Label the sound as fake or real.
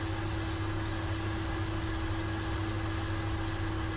real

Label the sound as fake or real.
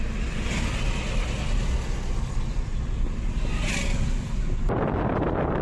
real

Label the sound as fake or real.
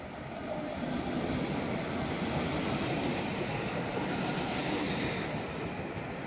real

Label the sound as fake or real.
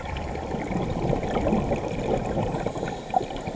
real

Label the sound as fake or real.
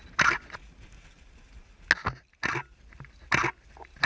real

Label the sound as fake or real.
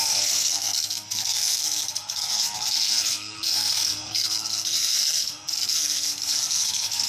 fake